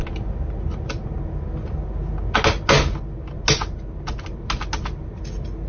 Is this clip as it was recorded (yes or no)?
yes